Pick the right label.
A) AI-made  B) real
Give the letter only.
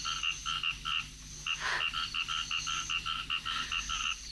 B